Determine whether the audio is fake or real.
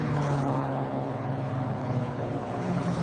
fake